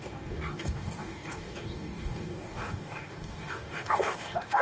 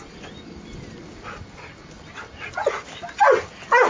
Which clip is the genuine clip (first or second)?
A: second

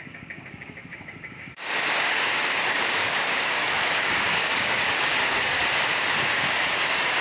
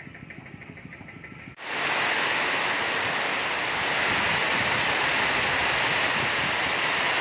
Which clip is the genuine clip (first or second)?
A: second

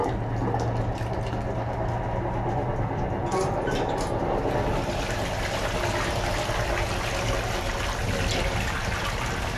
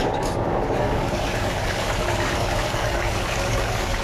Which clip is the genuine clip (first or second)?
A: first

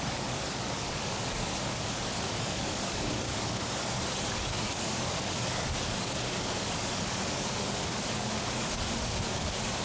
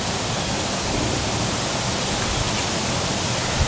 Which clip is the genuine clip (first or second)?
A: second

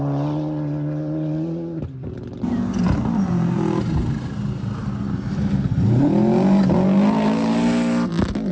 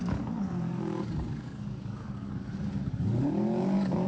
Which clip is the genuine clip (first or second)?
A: first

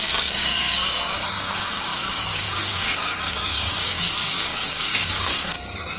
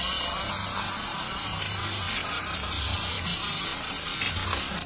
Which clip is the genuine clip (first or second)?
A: second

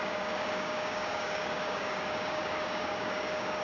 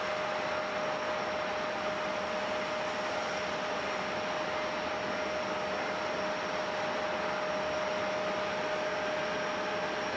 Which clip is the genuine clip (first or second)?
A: second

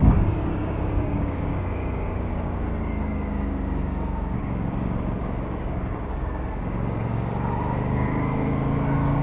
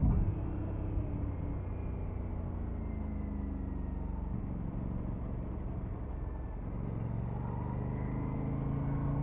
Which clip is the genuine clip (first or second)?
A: second